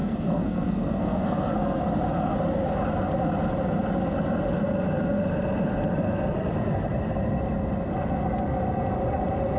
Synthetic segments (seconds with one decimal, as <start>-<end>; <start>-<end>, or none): 0.0-1.8